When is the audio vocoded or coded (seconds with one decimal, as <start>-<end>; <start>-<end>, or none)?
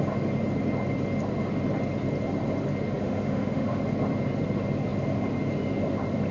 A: 3.0-3.8